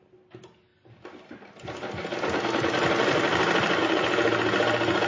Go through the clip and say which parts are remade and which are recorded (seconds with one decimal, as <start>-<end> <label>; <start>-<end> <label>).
0.0-5.1 recorded